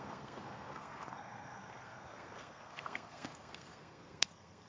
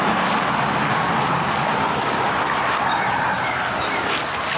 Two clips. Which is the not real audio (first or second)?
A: first